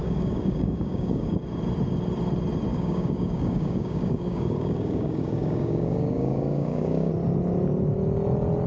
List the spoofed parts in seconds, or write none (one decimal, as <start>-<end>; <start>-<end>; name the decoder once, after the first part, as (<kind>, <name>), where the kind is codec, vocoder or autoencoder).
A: 0.0-1.4 (codec, DAC); 2.7-7.1

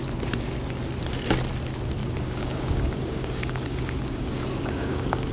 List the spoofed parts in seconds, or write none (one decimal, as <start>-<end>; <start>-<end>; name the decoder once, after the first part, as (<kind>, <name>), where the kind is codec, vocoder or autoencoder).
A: 2.0-5.3 (codec, DAC)

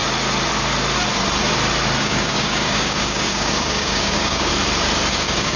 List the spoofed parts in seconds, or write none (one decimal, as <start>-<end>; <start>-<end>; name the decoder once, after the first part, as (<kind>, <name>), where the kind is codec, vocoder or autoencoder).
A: 2.0-4.5 (codec, DAC); 5.1-5.6